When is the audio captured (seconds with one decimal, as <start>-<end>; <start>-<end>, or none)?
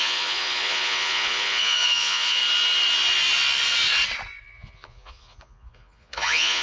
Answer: 2.4-4.4